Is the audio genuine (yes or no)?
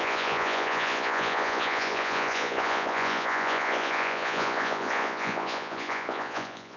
no